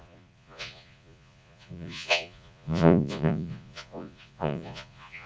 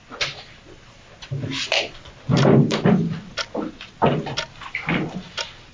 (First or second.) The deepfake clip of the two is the first